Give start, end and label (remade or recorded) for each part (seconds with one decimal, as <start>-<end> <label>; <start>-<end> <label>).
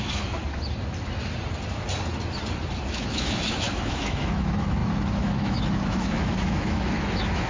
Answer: 0.0-0.4 remade; 0.4-2.9 recorded; 2.9-7.5 remade